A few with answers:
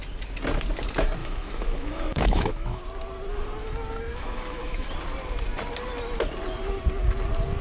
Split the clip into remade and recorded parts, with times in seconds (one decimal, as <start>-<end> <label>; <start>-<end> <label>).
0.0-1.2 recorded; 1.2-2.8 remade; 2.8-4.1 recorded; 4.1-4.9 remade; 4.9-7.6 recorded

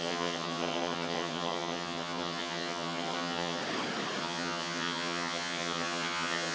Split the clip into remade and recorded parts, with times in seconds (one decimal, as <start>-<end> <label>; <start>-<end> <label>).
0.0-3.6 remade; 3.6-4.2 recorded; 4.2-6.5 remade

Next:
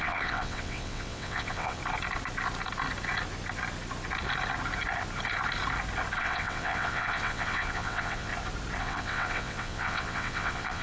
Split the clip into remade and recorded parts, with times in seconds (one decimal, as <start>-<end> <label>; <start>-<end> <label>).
0.0-1.8 remade; 1.8-6.2 recorded; 6.2-8.3 remade; 8.3-8.8 recorded; 8.8-10.8 remade

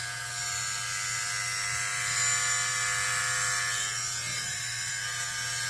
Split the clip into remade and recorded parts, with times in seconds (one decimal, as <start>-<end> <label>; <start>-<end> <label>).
0.0-4.3 recorded; 4.3-4.9 remade; 4.9-5.7 recorded

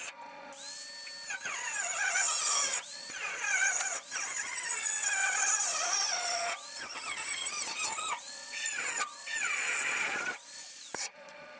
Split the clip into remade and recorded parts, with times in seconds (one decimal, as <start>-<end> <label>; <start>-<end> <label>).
0.0-0.5 remade; 0.5-1.3 recorded; 1.3-11.6 remade